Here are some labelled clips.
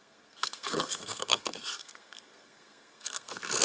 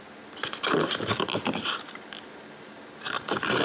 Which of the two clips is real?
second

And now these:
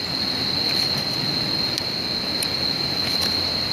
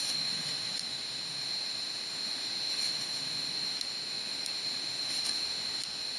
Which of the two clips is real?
first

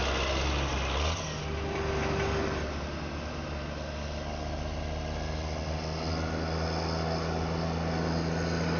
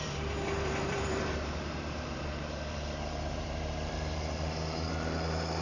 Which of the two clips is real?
first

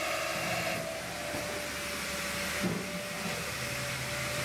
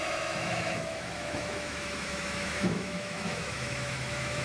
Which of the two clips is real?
first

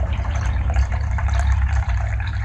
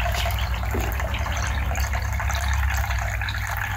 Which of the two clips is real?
second